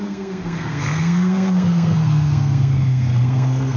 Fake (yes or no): yes